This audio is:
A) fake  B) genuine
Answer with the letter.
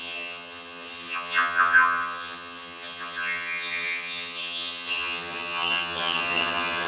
A